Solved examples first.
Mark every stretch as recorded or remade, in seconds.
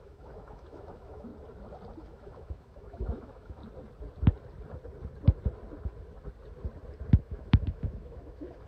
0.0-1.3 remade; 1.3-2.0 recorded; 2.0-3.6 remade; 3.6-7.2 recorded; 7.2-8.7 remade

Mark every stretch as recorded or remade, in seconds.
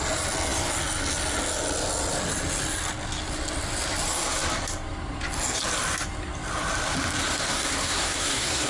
0.0-7.5 recorded; 7.5-8.7 remade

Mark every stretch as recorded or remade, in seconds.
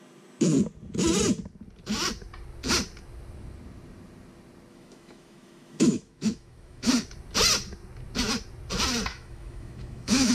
0.0-4.7 recorded; 4.7-6.9 remade; 6.9-9.1 recorded; 9.1-10.3 remade